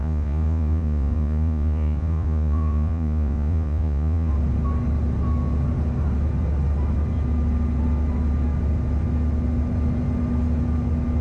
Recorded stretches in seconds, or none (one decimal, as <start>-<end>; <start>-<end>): 4.3-11.2